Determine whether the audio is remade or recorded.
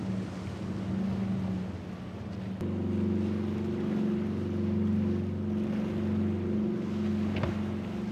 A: recorded